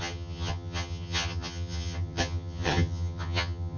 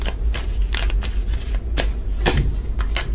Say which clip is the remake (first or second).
first